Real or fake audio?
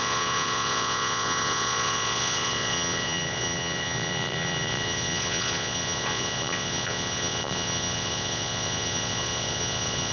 fake